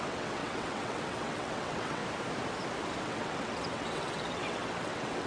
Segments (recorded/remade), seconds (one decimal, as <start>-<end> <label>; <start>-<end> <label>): 0.0-2.0 remade; 2.0-3.0 recorded; 3.0-5.3 remade